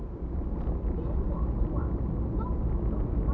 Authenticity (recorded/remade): recorded